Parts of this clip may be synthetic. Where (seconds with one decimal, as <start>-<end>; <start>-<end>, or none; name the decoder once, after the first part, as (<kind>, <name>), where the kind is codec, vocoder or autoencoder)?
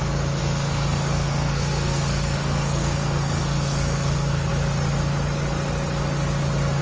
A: 0.4-4.5 (codec, SNAC)